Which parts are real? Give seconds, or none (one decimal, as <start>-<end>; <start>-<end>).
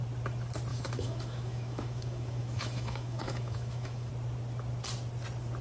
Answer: 0.0-0.7; 4.1-5.6